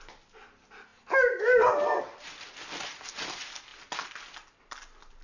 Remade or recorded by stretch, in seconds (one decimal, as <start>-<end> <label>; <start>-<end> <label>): 0.0-5.2 recorded